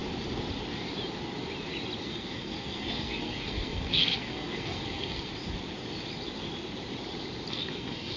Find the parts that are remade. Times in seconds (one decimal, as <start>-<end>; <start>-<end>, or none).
2.0-5.3; 7.5-8.2